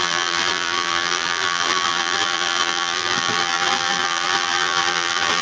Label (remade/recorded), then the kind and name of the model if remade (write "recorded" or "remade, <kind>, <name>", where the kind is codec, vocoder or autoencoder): remade, vocoder, BigVGAN v2